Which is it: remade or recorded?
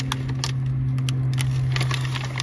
recorded